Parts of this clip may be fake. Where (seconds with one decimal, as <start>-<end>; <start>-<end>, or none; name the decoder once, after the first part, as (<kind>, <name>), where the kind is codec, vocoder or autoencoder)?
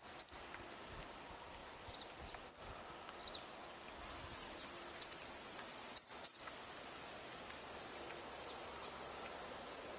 none